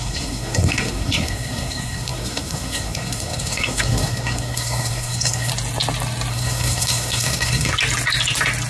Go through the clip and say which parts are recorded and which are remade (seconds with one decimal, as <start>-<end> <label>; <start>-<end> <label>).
0.0-5.5 remade; 5.5-6.3 recorded; 6.3-7.7 remade; 7.7-8.7 recorded